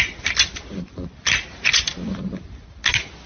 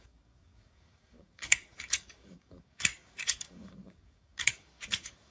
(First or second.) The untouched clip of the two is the first